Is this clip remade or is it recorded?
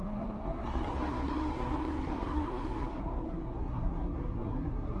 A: remade